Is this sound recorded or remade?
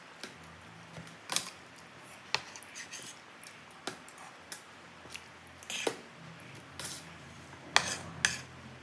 recorded